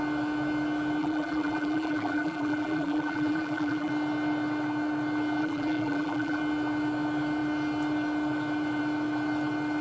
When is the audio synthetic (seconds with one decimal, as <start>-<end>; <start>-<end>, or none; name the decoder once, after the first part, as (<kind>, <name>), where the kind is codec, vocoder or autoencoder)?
1.0-3.9 (vocoder, BigVGAN v2); 5.4-6.4